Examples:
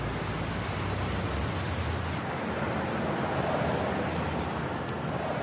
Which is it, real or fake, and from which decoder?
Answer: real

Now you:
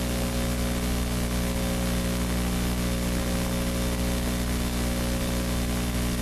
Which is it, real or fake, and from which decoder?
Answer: real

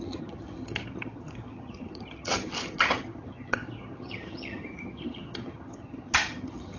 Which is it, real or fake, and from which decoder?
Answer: fake, vocoder, HiFi-GAN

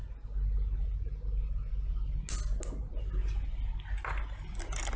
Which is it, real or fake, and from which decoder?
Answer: real